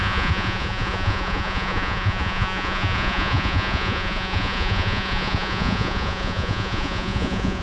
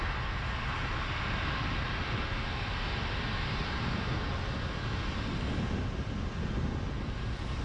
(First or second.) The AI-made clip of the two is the first